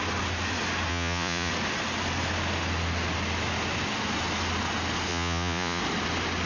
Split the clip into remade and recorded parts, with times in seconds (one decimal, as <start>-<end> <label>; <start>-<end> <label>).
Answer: 0.0-0.9 recorded; 0.9-1.5 remade; 1.5-5.1 recorded; 5.1-5.8 remade; 5.8-6.5 recorded